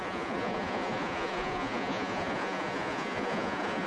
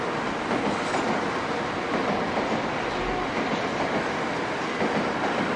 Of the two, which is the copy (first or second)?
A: first